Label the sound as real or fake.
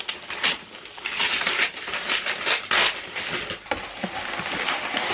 real